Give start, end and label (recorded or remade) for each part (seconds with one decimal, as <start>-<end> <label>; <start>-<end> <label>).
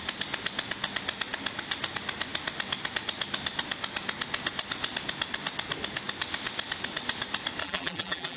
0.0-7.6 recorded; 7.6-8.4 remade